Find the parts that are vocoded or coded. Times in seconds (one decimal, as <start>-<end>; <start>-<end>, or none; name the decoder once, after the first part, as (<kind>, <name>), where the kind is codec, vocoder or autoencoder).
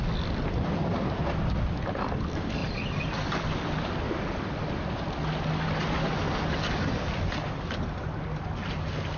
none